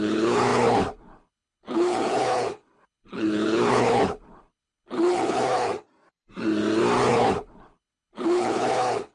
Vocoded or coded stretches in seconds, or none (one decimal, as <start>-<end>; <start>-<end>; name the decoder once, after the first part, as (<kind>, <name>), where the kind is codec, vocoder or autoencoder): 0.0-5.7 (codec, HILCodec); 7.1-9.1